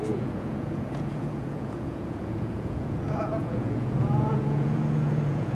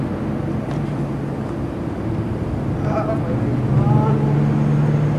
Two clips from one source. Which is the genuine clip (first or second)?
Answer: second